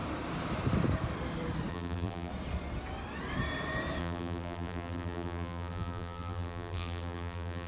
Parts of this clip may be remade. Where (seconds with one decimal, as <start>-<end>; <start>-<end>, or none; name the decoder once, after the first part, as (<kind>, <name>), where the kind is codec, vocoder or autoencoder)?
1.7-2.3 (vocoder, BigVGAN v2); 4.0-7.7